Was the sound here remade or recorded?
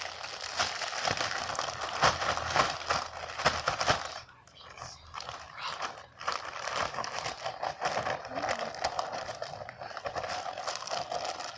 recorded